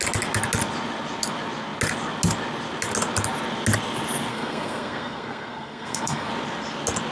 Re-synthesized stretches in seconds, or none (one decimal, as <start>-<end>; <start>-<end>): 4.3-6.3